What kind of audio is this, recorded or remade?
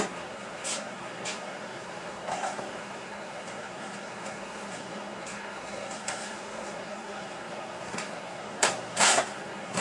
remade